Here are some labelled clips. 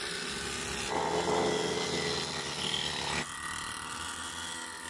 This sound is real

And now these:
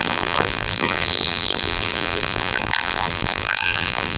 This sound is fake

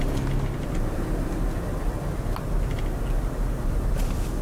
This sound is real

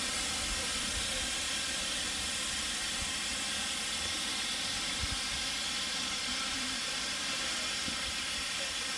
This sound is fake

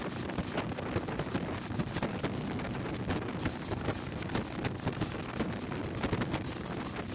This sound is real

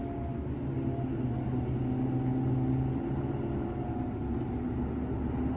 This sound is real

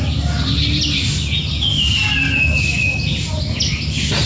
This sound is real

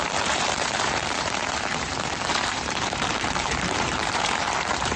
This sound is fake